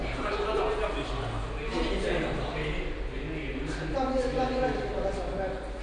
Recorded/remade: recorded